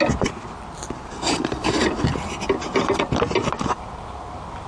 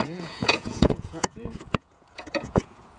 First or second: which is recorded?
first